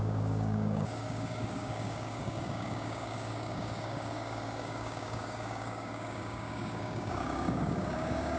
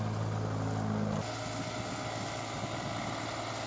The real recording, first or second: second